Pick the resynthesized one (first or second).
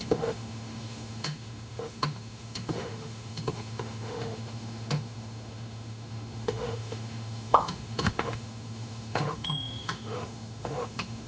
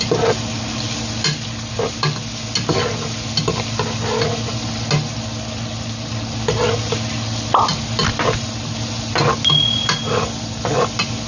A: first